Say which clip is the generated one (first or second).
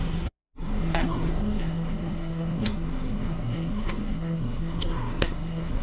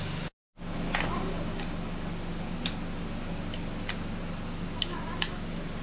first